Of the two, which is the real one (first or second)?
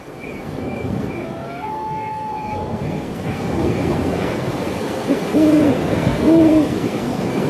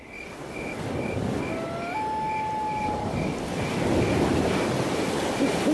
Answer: second